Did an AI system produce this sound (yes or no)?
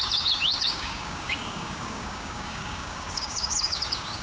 yes